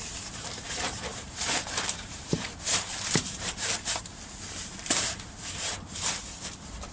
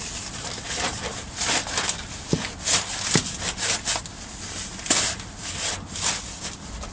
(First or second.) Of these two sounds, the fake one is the first